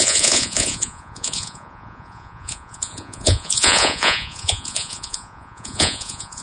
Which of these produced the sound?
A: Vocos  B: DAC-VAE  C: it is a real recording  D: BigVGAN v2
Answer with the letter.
A